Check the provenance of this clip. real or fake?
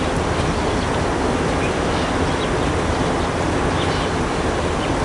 real